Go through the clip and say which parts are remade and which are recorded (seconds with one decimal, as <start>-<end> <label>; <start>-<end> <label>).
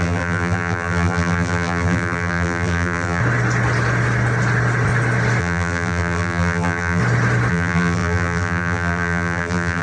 0.0-3.2 remade; 3.2-5.4 recorded; 5.4-7.0 remade; 7.0-7.5 recorded; 7.5-9.8 remade